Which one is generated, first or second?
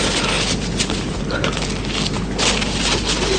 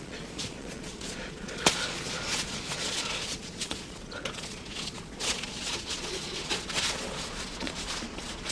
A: second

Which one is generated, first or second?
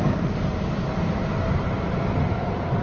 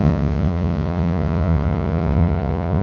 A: second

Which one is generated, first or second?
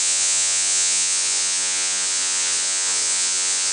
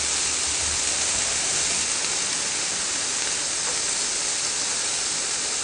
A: first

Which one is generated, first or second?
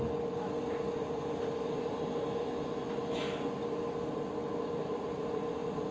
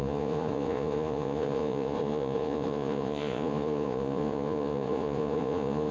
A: second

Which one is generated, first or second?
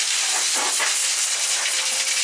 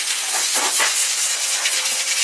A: second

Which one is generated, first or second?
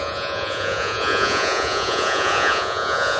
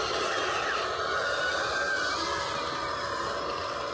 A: first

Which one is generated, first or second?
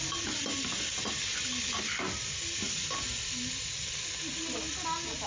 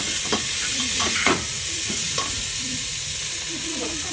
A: second